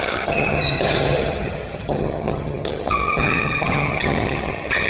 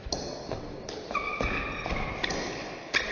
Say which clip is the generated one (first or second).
first